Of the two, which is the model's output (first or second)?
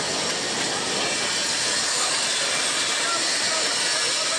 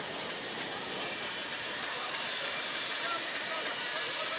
second